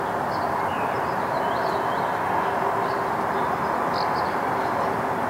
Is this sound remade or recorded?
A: recorded